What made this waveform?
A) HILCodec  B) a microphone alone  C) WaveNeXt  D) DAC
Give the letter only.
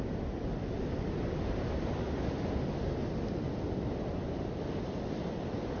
B